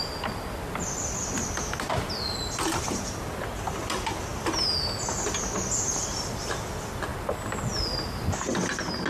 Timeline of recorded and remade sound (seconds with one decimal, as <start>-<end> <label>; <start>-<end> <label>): 0.0-9.1 recorded